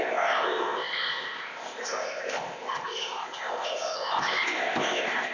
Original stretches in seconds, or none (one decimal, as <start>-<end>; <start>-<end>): none